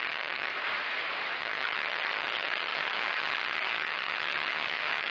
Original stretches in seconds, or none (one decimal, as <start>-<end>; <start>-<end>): 0.5-1.4

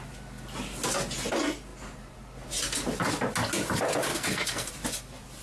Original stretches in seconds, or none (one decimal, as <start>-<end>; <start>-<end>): 0.0-4.1; 4.7-5.4

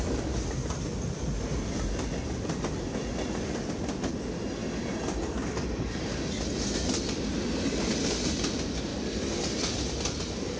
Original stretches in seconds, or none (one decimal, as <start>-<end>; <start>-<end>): 0.0-10.6